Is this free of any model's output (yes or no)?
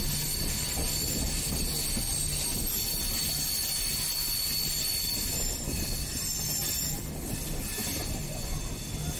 yes